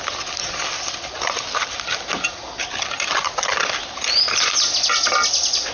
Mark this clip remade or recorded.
recorded